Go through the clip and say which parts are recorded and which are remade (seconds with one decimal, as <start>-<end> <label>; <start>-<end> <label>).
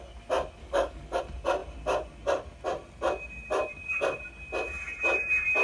0.0-0.6 recorded; 0.6-1.2 remade; 1.2-5.6 recorded